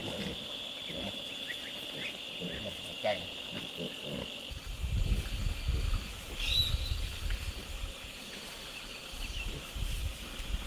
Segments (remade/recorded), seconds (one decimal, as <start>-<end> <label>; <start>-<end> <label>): 0.0-3.6 remade; 3.6-7.6 recorded; 7.6-10.0 remade; 10.0-10.7 recorded